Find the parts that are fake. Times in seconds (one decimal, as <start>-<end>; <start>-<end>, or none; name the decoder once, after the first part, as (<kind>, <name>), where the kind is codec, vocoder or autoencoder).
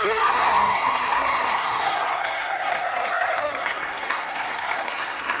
0.0-5.4 (codec, SNAC)